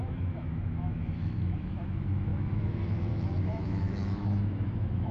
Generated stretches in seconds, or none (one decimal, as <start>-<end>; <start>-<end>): 0.0-5.1